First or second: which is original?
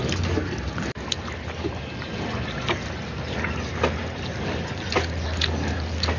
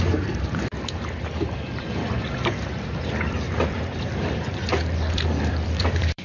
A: first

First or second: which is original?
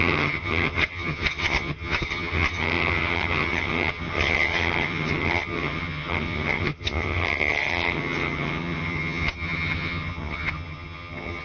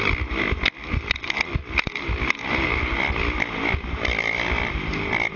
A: second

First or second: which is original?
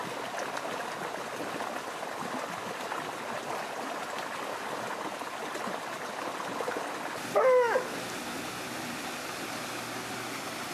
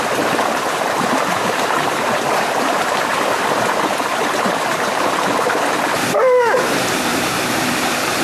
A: first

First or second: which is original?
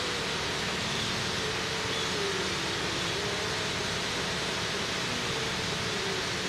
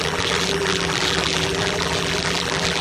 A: first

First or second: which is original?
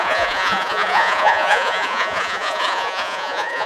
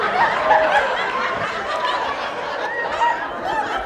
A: second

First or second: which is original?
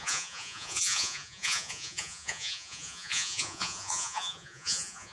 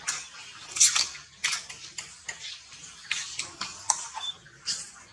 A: second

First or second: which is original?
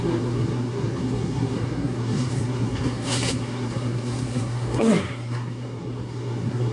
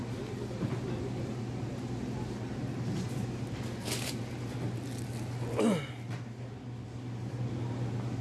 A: second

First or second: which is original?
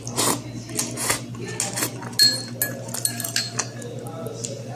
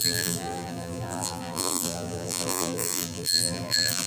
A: first